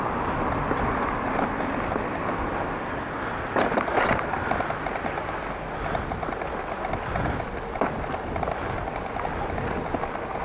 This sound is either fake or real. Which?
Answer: real